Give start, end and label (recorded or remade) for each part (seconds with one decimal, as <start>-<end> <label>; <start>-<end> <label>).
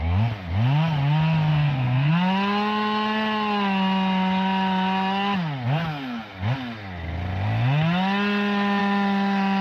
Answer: 0.0-1.5 recorded; 1.5-2.1 remade; 2.1-9.6 recorded